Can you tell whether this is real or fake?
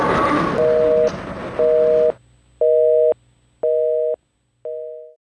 real